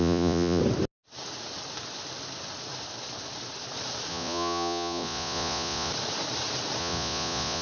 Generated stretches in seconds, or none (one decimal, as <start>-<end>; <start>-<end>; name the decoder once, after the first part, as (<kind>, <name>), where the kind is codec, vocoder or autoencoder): 0.0-0.6 (vocoder, Vocos); 4.1-5.9; 6.8-7.6